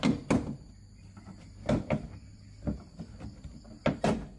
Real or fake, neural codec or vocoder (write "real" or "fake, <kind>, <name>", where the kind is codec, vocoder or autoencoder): real